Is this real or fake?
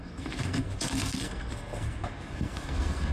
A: fake